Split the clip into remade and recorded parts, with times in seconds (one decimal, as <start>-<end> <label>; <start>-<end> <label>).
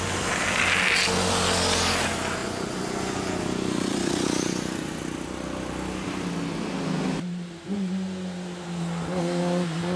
0.0-2.4 recorded; 2.4-5.0 remade; 5.0-10.0 recorded